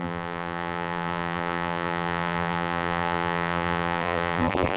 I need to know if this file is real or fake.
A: fake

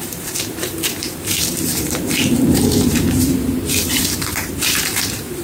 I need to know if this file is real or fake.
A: fake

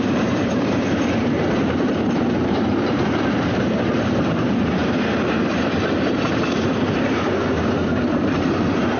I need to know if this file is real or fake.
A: fake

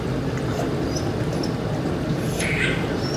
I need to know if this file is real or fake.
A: real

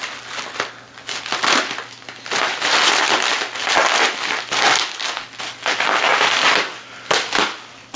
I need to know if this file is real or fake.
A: real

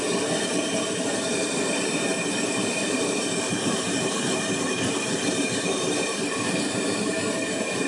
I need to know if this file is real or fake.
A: fake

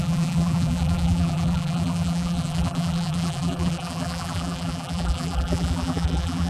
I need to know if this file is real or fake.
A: fake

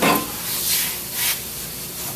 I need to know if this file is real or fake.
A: real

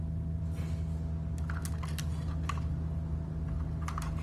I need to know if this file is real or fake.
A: real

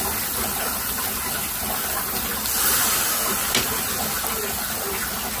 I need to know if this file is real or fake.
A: real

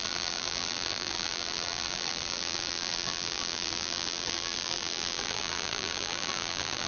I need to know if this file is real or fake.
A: fake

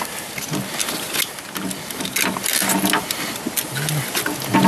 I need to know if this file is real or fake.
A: real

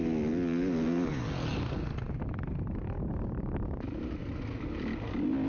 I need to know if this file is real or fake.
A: real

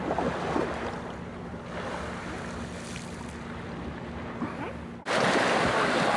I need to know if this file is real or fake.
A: real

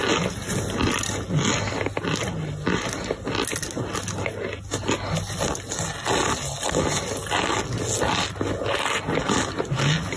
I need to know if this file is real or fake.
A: real